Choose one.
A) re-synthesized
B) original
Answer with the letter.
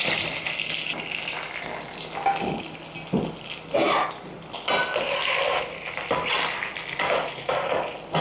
B